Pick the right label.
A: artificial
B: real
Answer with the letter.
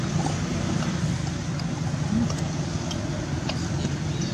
B